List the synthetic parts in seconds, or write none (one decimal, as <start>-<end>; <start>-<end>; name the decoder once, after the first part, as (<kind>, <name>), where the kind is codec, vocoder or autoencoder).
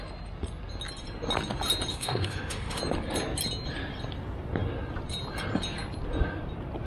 1.9-2.8 (autoencoder, DAC-VAE)